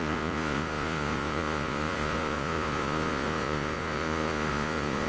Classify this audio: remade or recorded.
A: remade